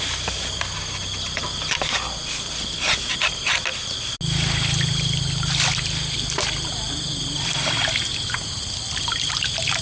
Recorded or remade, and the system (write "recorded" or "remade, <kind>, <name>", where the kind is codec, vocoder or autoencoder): recorded